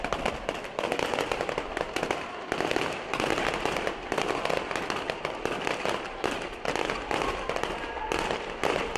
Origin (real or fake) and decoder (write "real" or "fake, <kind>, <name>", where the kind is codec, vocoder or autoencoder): real